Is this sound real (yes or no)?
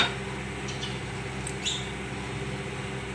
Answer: yes